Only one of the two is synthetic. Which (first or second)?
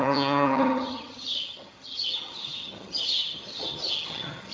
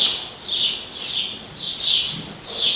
first